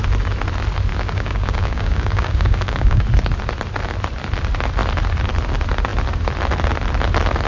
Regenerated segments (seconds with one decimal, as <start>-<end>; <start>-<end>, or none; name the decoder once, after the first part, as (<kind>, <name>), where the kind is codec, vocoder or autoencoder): 0.9-3.0 (codec, DAC)